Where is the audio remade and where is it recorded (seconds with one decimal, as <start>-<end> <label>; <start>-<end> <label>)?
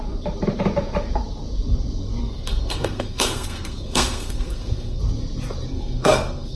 0.0-2.2 recorded; 2.2-5.0 remade; 5.0-5.7 recorded; 5.7-6.6 remade